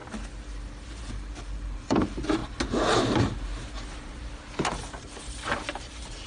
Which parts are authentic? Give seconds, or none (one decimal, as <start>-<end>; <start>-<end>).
0.0-1.1; 2.4-5.0